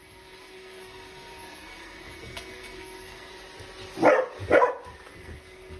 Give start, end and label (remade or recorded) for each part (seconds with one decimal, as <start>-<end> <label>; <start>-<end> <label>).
0.0-3.3 remade; 3.3-5.1 recorded; 5.1-5.8 remade